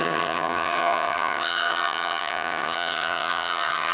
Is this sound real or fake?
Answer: fake